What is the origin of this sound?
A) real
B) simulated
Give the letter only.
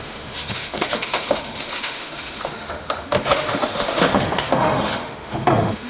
B